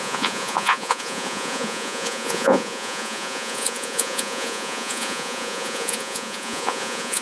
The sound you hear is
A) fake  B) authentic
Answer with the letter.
A